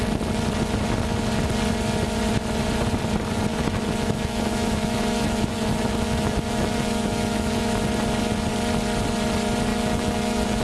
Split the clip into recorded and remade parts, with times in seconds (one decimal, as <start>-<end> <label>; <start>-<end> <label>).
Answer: 0.0-3.5 recorded; 3.5-7.7 remade; 7.7-9.7 recorded; 9.7-10.6 remade